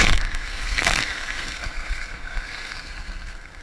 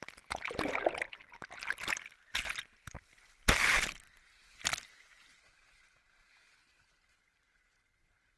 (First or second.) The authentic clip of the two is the second